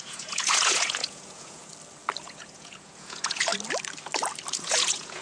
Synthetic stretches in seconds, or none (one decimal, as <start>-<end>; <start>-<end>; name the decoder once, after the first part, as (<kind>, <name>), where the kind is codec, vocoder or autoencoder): 0.0-1.7 (vocoder, Vocos); 2.2-3.5; 4.6-5.2

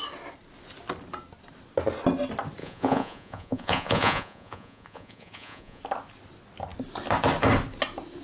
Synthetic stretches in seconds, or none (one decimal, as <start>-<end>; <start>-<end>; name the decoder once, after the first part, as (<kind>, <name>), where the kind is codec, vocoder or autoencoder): 2.6-5.8 (vocoder, Vocos)

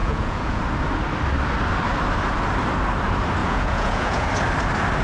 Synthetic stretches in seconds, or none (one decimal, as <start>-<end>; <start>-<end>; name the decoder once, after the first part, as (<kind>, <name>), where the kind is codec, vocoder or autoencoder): 0.0-0.6 (vocoder, Vocos); 3.4-4.3